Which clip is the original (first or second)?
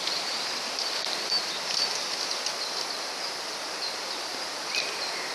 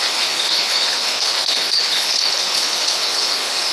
first